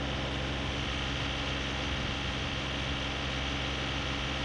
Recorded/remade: recorded